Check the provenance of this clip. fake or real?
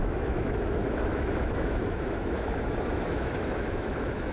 fake